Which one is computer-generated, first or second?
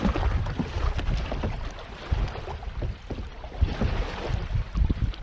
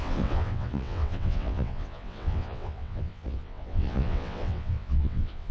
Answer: second